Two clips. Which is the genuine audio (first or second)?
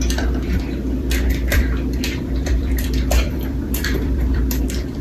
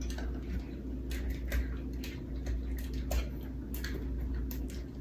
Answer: second